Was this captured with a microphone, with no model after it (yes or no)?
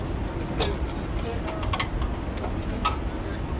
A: yes